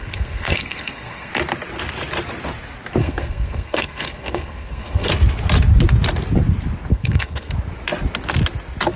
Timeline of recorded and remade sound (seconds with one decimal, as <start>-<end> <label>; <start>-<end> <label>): 0.0-1.3 remade; 1.3-3.0 recorded; 3.0-5.1 remade; 5.1-6.9 recorded; 6.9-7.5 remade; 7.5-9.0 recorded